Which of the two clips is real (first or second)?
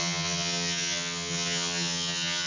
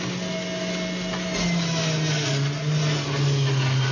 second